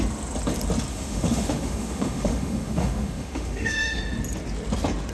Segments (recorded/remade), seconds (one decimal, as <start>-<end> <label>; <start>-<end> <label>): 0.0-0.9 recorded; 0.9-4.0 remade; 4.0-5.1 recorded